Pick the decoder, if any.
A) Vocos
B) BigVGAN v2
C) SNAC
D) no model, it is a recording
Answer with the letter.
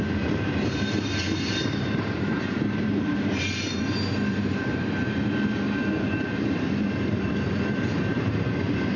B